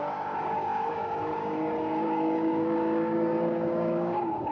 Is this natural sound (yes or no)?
no